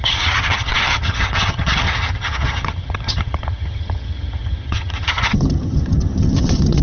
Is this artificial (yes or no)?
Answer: yes